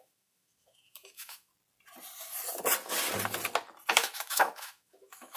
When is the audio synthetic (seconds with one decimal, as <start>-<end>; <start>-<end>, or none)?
0.0-1.5; 3.9-5.4